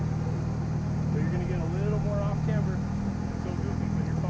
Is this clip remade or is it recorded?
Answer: recorded